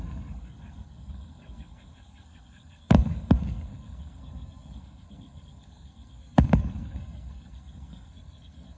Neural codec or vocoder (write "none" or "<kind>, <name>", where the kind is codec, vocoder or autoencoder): codec, SNAC